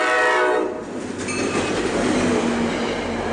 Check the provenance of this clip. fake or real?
real